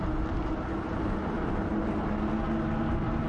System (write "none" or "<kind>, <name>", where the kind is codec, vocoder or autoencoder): none